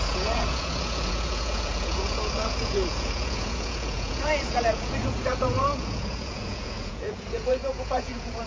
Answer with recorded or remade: remade